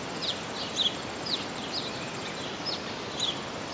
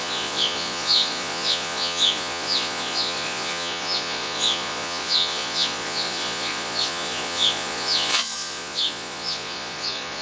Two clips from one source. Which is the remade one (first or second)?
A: second